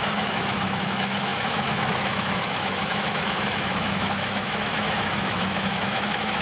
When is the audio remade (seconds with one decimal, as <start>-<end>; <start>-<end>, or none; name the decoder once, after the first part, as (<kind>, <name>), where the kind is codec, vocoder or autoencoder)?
0.0-6.4 (autoencoder, DAC-VAE)